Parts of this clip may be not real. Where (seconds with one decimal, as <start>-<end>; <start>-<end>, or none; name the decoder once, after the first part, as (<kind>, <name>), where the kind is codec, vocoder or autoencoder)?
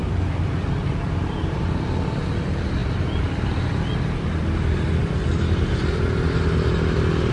none